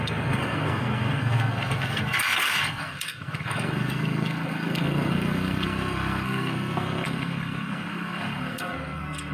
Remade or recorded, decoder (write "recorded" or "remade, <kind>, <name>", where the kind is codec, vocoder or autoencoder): remade, codec, SNAC